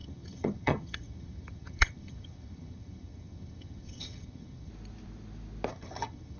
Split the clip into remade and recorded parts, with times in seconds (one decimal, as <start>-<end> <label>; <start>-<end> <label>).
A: 0.0-4.7 remade; 4.7-5.7 recorded; 5.7-6.4 remade